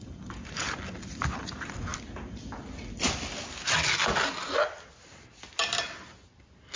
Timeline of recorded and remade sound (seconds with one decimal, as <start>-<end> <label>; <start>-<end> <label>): 0.0-6.8 recorded